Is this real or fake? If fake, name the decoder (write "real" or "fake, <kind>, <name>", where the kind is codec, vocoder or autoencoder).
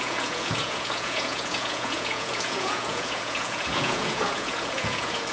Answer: fake, vocoder, Vocos